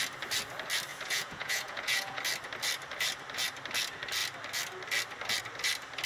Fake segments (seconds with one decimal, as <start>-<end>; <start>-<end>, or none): 0.9-2.2